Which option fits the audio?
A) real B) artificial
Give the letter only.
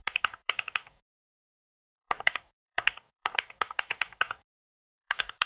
B